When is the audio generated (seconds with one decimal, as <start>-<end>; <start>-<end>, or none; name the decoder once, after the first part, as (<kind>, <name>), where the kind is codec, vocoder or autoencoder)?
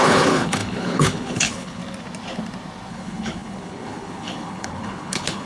0.0-1.8 (codec, HILCodec); 2.9-5.5